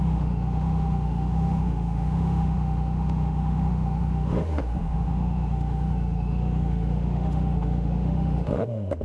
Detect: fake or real fake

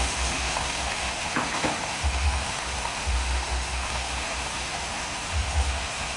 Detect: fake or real fake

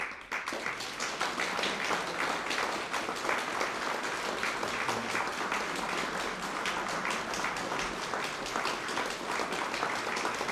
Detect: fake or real real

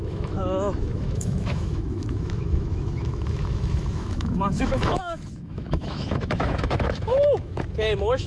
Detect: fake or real fake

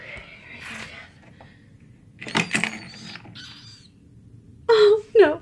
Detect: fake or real real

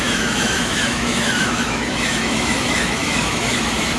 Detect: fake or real fake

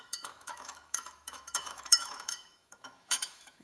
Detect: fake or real fake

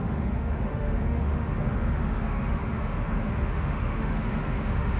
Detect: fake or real fake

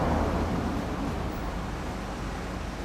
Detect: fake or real real